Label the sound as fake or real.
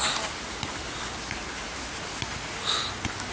real